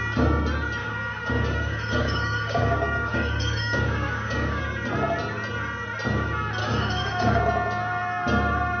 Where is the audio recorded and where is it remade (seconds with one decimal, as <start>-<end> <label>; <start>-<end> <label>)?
0.0-0.8 recorded; 0.8-4.6 remade; 4.6-6.6 recorded; 6.6-7.4 remade; 7.4-8.8 recorded